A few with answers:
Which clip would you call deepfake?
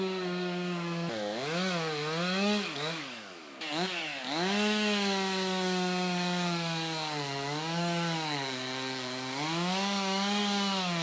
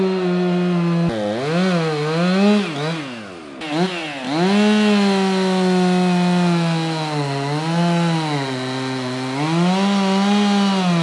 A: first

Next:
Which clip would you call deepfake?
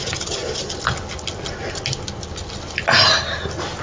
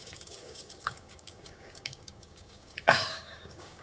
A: second